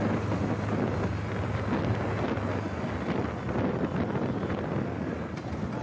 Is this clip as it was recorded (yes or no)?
yes